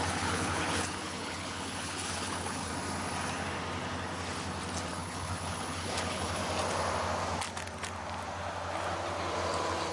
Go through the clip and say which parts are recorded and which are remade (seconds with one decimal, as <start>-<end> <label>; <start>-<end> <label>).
0.0-2.7 remade; 2.7-4.9 recorded; 4.9-6.4 remade; 6.4-9.9 recorded